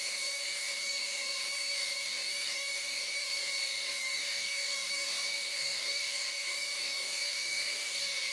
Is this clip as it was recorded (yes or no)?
no